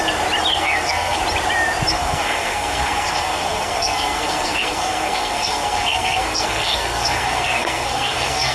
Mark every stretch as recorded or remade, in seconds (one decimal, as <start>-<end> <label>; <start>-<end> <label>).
0.0-0.5 recorded; 0.5-1.2 remade; 1.2-1.9 recorded; 1.9-8.5 remade

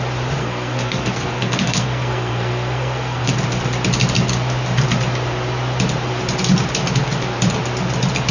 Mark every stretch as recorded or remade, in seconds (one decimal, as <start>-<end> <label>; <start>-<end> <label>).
0.0-0.4 recorded; 0.4-3.3 remade; 3.3-8.3 recorded

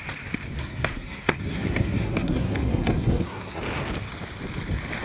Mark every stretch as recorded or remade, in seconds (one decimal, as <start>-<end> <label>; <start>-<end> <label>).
0.0-0.6 recorded; 0.6-3.6 remade; 3.6-5.0 recorded

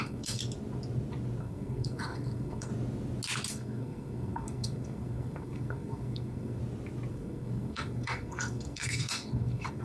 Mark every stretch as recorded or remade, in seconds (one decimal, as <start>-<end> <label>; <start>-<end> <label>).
0.0-0.4 remade; 0.4-1.4 recorded; 1.4-2.7 remade; 2.7-3.5 recorded; 3.5-6.6 remade; 6.6-7.1 recorded; 7.1-9.8 remade

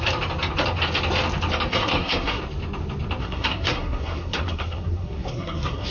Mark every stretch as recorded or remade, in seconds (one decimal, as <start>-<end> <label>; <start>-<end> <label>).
0.0-1.7 recorded; 1.7-2.4 remade; 2.4-3.2 recorded; 3.2-5.9 remade

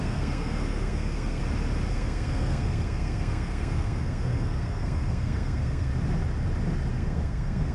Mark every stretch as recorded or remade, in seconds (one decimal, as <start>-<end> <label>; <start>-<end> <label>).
0.0-1.4 remade; 1.4-1.9 recorded; 1.9-5.9 remade; 5.9-6.9 recorded; 6.9-7.7 remade

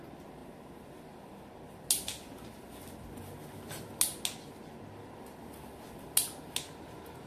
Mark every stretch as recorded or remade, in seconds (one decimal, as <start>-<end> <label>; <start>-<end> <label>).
0.0-7.3 recorded

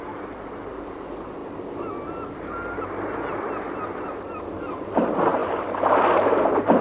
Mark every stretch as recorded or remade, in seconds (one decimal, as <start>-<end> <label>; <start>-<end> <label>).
0.0-6.8 recorded